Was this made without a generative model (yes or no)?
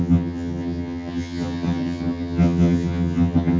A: no